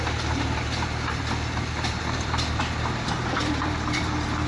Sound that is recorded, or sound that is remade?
remade